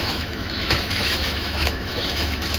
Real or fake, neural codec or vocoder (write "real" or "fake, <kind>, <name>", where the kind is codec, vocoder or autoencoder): fake, autoencoder, DAC-VAE